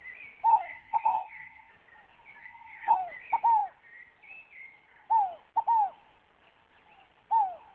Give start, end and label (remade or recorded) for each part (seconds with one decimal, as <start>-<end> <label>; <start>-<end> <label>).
0.0-0.5 recorded; 0.5-1.7 remade; 1.7-2.4 recorded; 2.4-3.0 remade; 3.0-7.7 recorded